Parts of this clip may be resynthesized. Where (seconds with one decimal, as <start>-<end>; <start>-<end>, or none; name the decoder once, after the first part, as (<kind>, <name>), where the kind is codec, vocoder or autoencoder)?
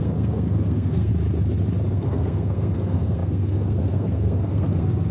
0.0-1.1 (codec, SNAC); 1.9-5.1